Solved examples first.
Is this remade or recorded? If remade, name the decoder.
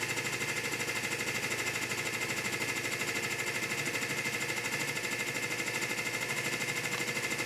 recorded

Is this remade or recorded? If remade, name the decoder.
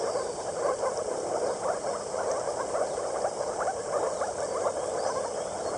recorded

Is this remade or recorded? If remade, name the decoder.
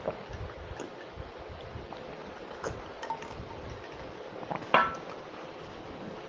recorded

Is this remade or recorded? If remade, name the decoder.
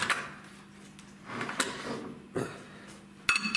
recorded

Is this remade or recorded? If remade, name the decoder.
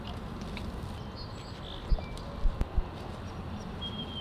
recorded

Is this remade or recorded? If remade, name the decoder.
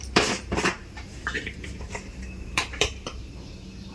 remade, vocoder, BigVGAN v2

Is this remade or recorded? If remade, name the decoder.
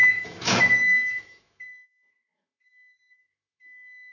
remade, autoencoder, DAC-VAE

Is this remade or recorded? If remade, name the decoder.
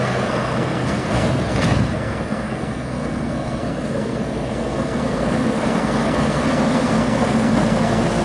remade, codec, SNAC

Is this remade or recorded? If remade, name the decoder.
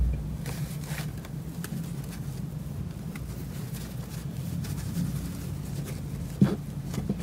recorded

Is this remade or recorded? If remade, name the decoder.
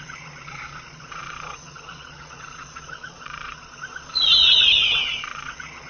remade, vocoder, Vocos